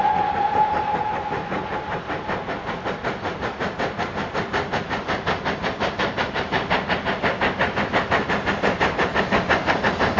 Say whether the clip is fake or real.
real